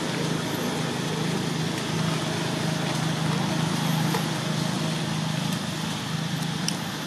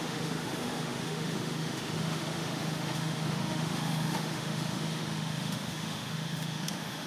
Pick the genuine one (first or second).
first